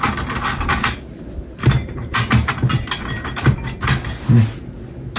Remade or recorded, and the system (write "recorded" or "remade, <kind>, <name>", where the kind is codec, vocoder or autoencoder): recorded